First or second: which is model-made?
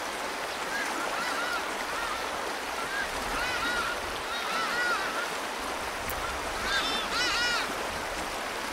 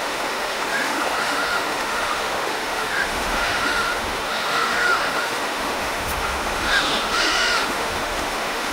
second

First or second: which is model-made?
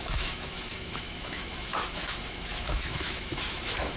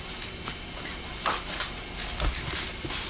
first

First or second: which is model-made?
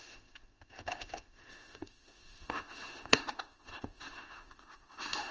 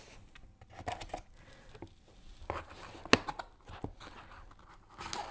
first